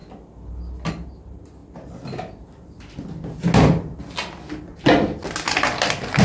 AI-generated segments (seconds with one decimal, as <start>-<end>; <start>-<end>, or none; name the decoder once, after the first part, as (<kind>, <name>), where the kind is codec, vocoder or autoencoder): none